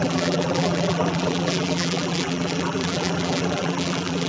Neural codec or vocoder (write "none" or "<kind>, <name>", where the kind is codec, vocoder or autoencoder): vocoder, BigVGAN v2